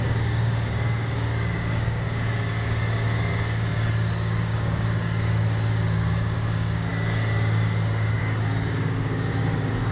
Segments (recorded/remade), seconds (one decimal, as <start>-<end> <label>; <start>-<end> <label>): 0.0-9.9 remade